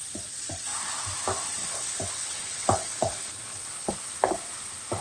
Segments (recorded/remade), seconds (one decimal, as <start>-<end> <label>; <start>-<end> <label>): 0.0-1.6 recorded; 1.6-3.9 remade; 3.9-5.0 recorded